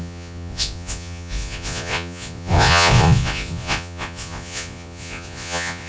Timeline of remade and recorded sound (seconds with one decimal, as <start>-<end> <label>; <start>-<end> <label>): 0.0-5.9 remade